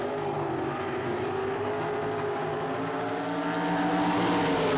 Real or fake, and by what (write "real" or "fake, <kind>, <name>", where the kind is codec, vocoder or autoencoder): real